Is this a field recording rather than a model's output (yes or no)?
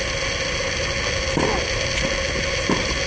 yes